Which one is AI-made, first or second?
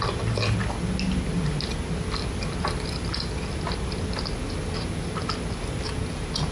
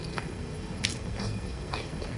second